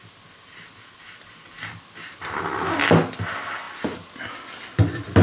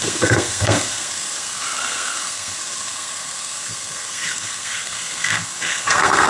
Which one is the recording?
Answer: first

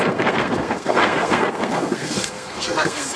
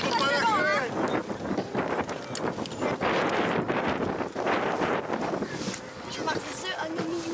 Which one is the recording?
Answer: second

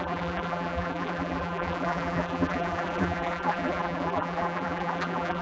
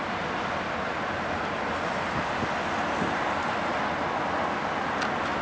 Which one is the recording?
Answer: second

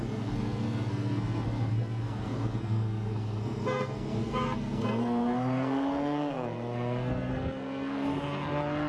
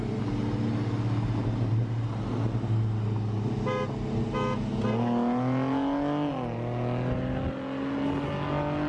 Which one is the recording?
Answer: second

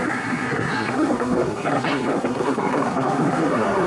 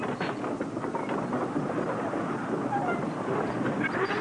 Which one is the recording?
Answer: second